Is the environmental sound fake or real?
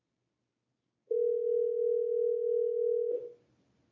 real